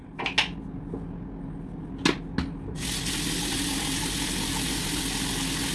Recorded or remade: recorded